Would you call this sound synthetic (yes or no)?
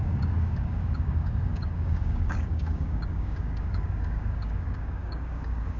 yes